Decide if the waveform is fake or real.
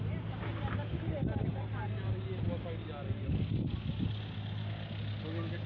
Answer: real